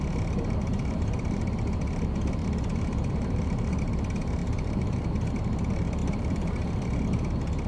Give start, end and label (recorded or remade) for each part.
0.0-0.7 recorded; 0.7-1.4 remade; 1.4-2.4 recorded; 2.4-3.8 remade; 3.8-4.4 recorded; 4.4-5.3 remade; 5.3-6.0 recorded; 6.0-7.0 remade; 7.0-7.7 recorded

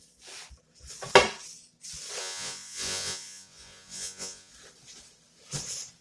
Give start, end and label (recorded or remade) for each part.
0.0-2.2 recorded; 2.2-4.5 remade; 4.5-6.0 recorded

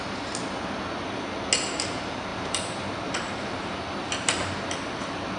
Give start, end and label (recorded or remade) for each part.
0.0-2.3 recorded; 2.3-4.1 remade; 4.1-5.4 recorded

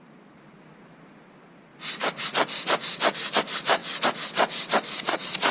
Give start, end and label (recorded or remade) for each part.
0.0-1.7 recorded; 1.7-2.2 remade; 2.2-2.9 recorded; 2.9-3.4 remade; 3.4-5.5 recorded